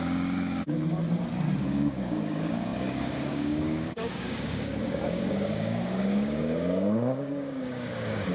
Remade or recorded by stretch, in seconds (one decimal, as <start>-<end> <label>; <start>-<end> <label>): 0.0-1.0 remade; 1.0-1.6 recorded; 1.6-8.3 remade